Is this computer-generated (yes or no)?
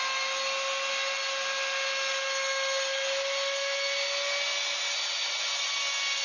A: no